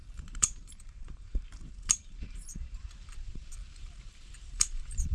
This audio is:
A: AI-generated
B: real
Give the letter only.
A